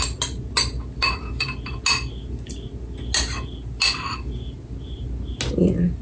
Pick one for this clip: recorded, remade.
recorded